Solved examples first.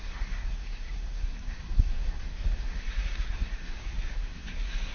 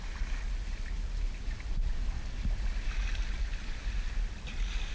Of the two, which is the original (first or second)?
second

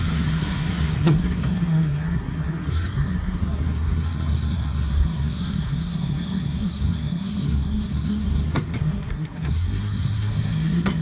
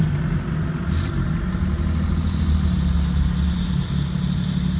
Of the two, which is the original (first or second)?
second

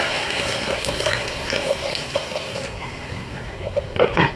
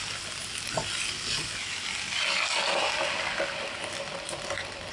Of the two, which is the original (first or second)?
second